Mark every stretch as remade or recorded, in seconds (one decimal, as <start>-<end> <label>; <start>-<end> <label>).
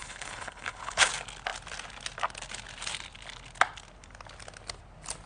0.0-1.1 remade; 1.1-5.3 recorded